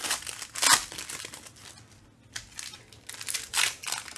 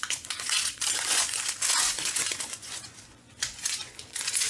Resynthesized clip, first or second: second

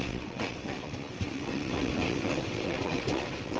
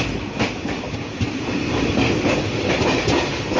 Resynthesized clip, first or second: first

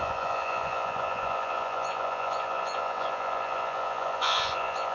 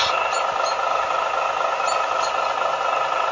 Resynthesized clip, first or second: first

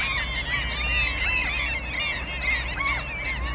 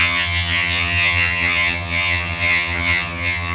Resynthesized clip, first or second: second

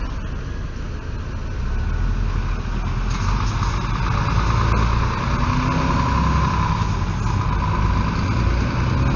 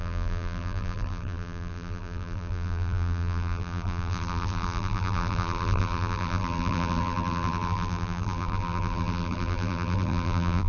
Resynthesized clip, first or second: second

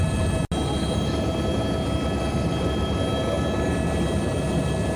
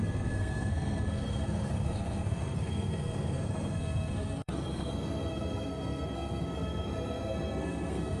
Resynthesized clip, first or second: second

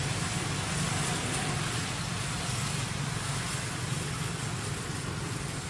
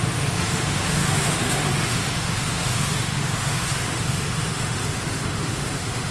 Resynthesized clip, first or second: second